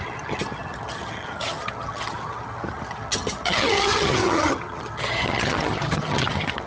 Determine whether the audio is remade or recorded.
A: remade